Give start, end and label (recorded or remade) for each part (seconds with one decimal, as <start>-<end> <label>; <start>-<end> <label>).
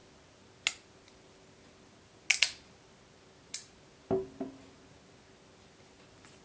0.0-6.4 recorded